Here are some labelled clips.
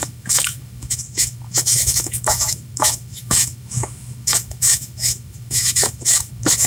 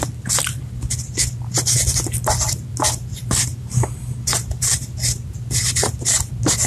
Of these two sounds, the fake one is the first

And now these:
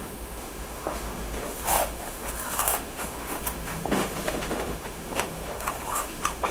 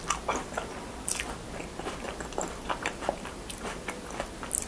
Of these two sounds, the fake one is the first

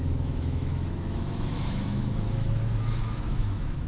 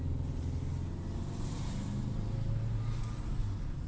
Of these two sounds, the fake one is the first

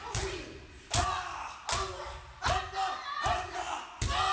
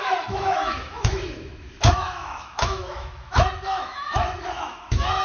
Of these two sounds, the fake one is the second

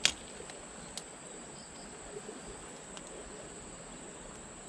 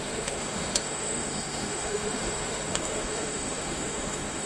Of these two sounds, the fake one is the second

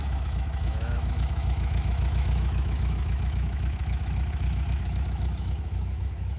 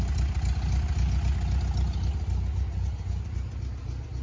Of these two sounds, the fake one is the first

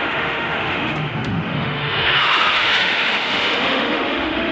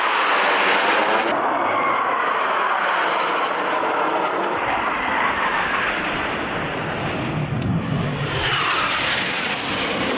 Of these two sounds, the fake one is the first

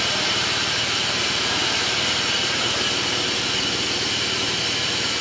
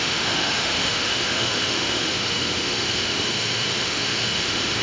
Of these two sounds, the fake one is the second